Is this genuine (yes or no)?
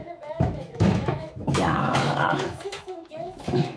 no